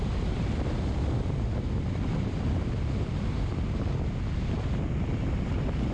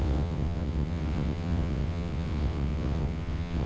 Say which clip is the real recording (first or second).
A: first